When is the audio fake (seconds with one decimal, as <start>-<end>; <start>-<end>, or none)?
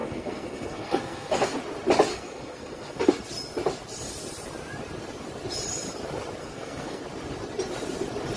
0.0-1.6; 2.1-3.1; 6.4-7.0